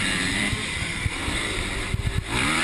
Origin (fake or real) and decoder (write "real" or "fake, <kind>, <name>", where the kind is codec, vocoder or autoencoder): fake, vocoder, BigVGAN v2